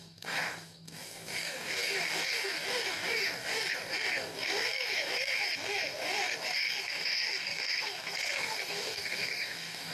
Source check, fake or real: fake